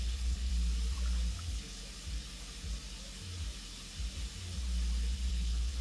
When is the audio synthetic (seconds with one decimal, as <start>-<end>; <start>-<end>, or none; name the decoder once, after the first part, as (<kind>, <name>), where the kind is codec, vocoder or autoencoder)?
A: 0.0-0.5 (codec, HILCodec); 1.4-1.8; 5.3-5.8